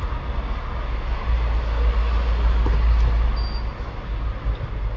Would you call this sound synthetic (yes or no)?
no